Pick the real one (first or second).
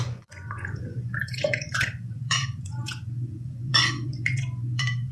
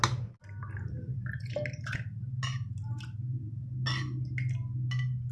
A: second